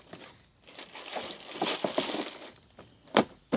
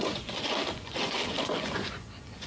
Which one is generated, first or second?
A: second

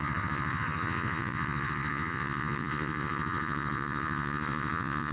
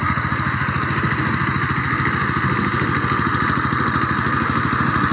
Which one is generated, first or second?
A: first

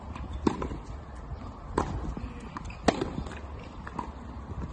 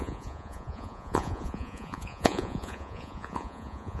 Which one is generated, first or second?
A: second